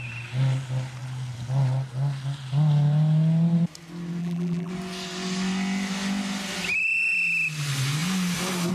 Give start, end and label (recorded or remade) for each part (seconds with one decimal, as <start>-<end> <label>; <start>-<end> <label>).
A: 0.0-4.2 recorded; 4.2-4.7 remade; 4.7-8.7 recorded